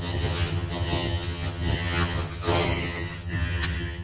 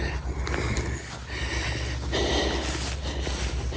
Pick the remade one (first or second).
first